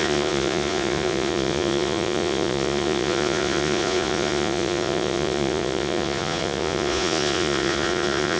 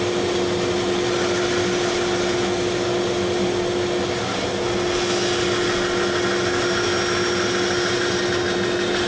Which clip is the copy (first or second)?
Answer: first